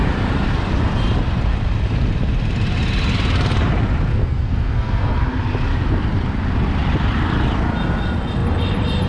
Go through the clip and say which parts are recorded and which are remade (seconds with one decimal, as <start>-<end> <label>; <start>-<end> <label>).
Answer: 0.0-4.1 recorded; 4.1-5.2 remade; 5.2-9.1 recorded